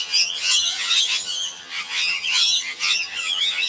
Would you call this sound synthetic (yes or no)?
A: yes